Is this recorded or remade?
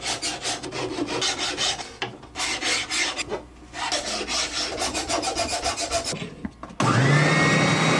recorded